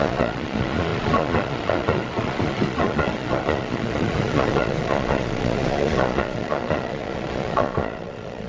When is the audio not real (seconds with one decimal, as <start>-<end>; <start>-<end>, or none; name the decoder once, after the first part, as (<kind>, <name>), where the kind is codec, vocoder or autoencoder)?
0.0-8.5 (vocoder, Vocos)